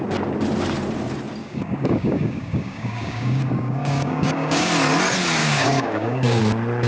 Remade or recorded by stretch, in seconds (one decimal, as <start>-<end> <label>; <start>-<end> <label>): 0.0-1.4 recorded; 1.4-4.7 remade; 4.7-5.4 recorded; 5.4-6.4 remade; 6.4-6.9 recorded